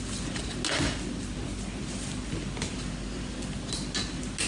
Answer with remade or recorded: recorded